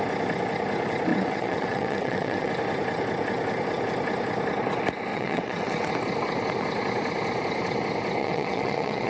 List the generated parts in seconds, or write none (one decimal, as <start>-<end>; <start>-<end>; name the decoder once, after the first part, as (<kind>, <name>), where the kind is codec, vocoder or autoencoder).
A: 1.1-2.5 (vocoder, WaveNeXt); 5.1-5.9; 8.2-9.1